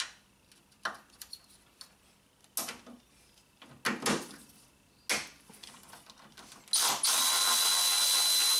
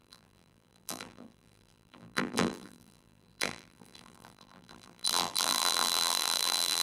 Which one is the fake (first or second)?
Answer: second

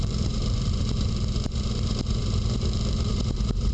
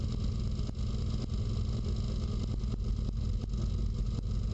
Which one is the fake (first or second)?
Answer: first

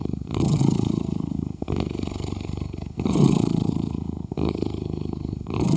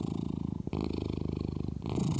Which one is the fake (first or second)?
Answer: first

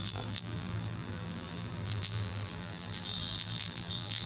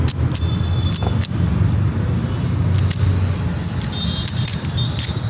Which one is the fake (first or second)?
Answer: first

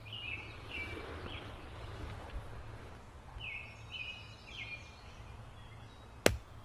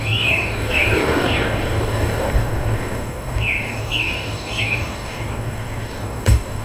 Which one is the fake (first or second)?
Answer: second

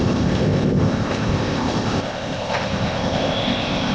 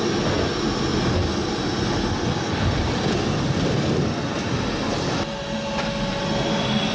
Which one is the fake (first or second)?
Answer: first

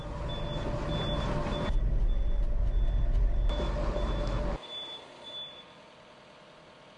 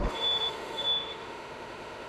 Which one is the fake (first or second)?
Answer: second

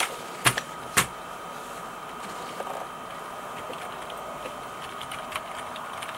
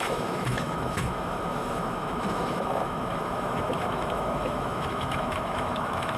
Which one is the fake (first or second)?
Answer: second